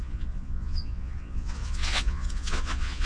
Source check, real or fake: fake